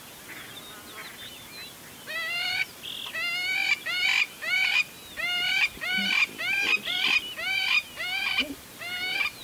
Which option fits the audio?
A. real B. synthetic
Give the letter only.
A